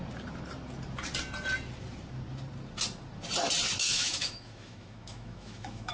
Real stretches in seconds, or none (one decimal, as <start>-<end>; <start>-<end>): 0.0-3.8